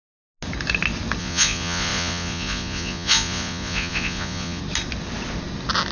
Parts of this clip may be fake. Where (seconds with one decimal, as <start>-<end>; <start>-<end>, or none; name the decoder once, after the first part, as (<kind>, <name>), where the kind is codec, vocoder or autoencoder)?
1.2-4.6 (vocoder, Vocos)

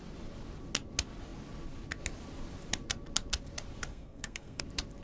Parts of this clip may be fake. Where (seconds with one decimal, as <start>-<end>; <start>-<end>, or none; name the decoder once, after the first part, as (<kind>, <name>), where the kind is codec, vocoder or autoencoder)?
3.9-4.6 (codec, SNAC)

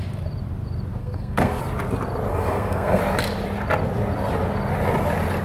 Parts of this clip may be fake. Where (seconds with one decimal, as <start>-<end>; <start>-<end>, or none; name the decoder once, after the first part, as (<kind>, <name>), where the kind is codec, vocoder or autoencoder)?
1.0-1.6 (codec, SNAC); 2.3-3.0

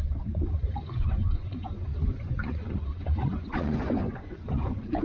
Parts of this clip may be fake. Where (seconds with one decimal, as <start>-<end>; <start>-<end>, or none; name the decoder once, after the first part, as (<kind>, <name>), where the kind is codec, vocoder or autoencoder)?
0.0-5.0 (vocoder, Vocos)

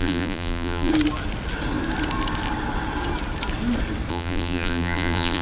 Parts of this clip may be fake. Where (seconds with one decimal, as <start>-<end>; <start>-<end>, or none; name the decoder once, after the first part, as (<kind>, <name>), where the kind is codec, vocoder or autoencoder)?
0.0-0.9 (vocoder, BigVGAN v2); 4.1-5.4

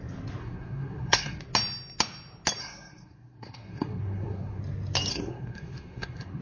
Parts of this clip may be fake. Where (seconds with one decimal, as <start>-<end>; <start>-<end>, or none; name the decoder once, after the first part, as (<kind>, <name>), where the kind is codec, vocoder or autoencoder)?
0.4-1.4 (codec, SNAC); 2.6-4.6; 5.1-6.4

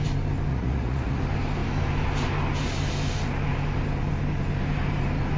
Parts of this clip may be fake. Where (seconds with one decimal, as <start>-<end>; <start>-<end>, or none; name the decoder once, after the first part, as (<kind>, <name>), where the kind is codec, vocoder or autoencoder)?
0.5-1.2 (vocoder, Vocos)